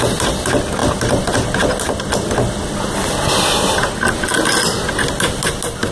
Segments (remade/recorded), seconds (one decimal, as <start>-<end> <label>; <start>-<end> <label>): 0.0-5.9 recorded

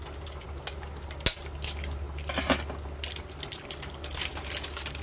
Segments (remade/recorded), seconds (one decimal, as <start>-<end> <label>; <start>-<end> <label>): 0.0-5.0 recorded